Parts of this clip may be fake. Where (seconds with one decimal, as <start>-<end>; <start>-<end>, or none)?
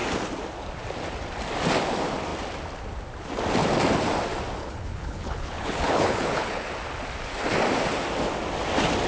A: 4.6-6.7